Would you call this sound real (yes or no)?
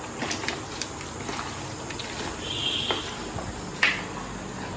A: yes